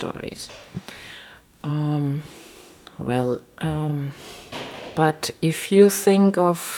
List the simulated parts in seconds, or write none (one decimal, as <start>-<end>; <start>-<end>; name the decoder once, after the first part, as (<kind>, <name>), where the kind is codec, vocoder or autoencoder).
0.0-1.7 (codec, DAC); 2.3-3.9; 5.1-6.8